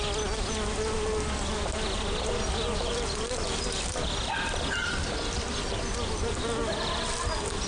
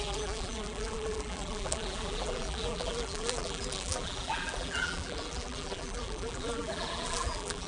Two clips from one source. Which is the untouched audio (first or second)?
first